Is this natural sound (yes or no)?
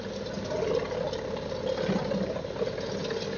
yes